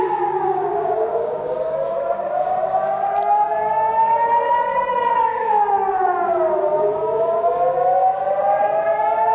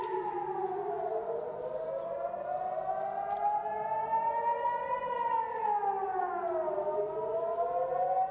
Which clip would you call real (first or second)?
second